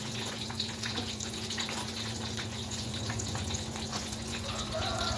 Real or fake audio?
fake